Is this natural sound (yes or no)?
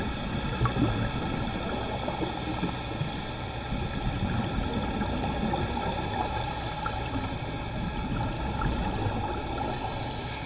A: yes